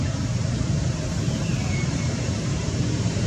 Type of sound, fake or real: fake